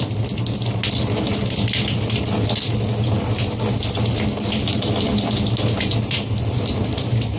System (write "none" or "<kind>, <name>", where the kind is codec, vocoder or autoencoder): none